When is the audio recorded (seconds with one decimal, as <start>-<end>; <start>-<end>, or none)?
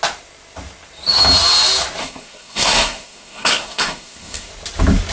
0.0-2.0; 4.5-5.1